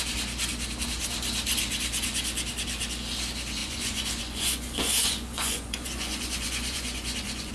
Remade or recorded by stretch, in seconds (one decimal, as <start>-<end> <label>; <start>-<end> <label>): 0.0-3.6 recorded; 3.6-7.5 remade